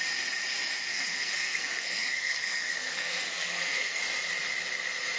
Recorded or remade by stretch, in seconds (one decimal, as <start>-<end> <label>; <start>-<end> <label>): 0.0-0.9 recorded; 0.9-4.0 remade; 4.0-5.2 recorded